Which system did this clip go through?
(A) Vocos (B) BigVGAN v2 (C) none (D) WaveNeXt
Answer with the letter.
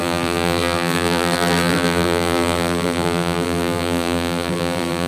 B